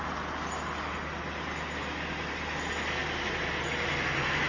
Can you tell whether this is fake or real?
real